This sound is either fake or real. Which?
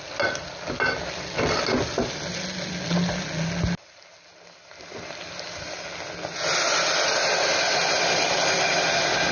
real